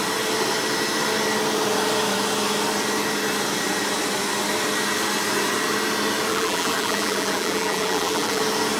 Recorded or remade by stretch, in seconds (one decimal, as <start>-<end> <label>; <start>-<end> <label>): 0.0-6.3 recorded; 6.3-8.4 remade; 8.4-8.8 recorded